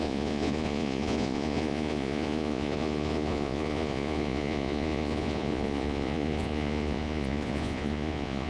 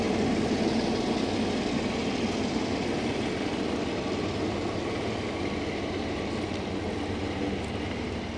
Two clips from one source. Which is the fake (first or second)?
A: first